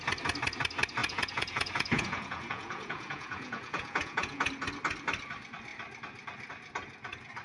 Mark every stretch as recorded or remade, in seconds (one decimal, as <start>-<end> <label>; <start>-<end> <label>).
0.0-1.0 recorded; 1.0-4.5 remade; 4.5-7.4 recorded